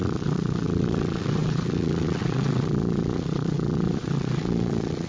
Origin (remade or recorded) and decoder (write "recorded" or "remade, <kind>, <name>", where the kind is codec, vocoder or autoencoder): remade, vocoder, Vocos